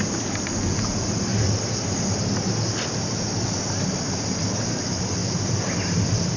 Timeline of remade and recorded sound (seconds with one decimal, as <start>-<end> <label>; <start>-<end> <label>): 0.0-6.4 recorded